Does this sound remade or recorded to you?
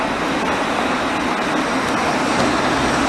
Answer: recorded